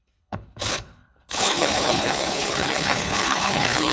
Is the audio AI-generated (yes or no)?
yes